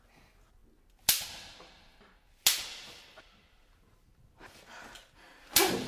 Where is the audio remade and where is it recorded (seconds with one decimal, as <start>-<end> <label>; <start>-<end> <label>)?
0.0-5.9 recorded